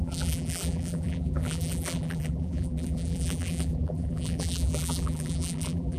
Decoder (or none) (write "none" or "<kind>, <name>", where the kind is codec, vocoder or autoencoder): vocoder, BigVGAN v2